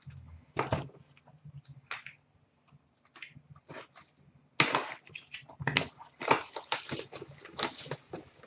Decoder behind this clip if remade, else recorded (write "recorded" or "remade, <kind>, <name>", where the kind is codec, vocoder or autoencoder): recorded